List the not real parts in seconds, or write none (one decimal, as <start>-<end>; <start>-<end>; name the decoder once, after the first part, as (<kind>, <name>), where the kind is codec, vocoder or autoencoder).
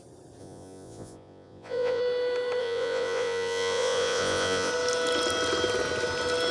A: 0.4-2.0 (vocoder, Vocos); 2.6-4.7